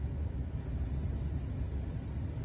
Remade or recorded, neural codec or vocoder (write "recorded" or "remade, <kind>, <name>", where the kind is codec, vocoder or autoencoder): recorded